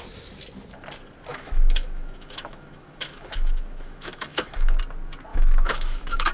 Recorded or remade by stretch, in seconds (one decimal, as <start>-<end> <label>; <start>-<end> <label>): 0.0-1.3 recorded; 1.3-4.8 remade; 4.8-5.3 recorded; 5.3-6.3 remade